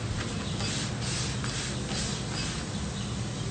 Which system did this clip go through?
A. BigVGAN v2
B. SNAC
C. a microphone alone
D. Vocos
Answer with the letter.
C